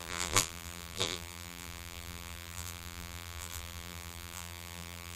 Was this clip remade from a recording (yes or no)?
yes